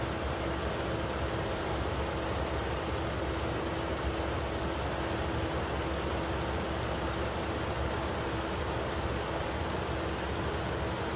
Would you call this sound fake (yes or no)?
no